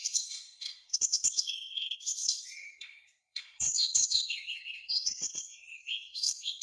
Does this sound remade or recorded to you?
remade